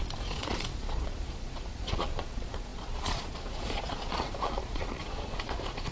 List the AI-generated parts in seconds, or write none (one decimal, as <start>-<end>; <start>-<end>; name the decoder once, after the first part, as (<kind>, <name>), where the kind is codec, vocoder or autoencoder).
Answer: 0.0-5.9 (vocoder, Vocos)